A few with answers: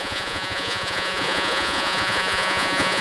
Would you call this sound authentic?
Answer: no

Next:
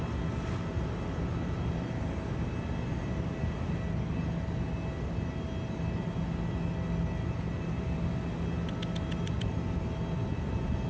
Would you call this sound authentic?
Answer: yes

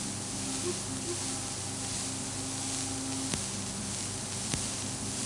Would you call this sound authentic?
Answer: yes